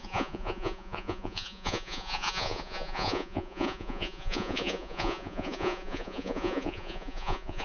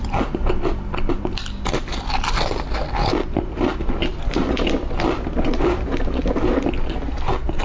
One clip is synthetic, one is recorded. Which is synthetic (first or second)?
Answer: first